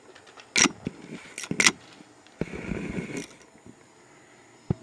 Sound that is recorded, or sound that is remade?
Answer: recorded